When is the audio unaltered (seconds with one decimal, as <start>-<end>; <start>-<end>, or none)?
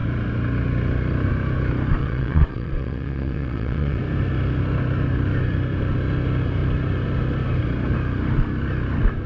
0.0-2.0; 4.0-9.3